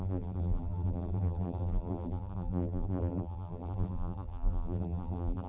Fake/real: fake